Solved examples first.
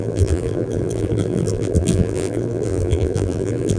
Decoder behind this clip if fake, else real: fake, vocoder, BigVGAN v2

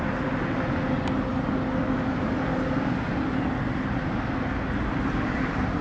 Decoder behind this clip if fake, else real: real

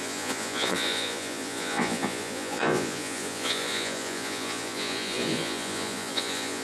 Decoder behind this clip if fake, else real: fake, vocoder, Vocos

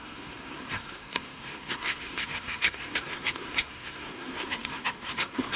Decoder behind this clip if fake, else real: fake, codec, SNAC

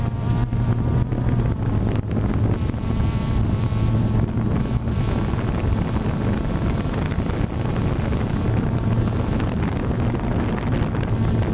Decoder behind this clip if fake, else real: real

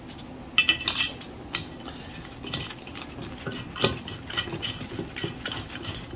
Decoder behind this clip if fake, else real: real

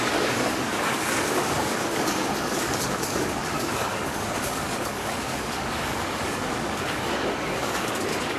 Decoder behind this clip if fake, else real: fake, codec, DAC